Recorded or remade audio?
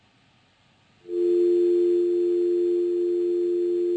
recorded